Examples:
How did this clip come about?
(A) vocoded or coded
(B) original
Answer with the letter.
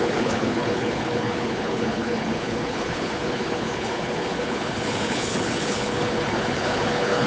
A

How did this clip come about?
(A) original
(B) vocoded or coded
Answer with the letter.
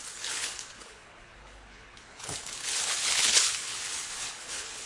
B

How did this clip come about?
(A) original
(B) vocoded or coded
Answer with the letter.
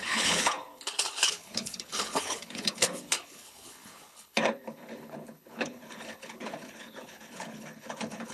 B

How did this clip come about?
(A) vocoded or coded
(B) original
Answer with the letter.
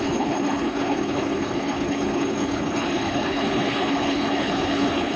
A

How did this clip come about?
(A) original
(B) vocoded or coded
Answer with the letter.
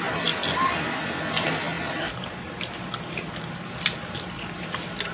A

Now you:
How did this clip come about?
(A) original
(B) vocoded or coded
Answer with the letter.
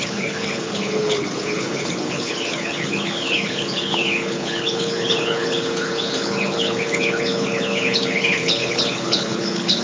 B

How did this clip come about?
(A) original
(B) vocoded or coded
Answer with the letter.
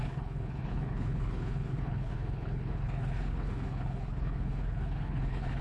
B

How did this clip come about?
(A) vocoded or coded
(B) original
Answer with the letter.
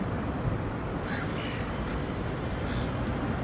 B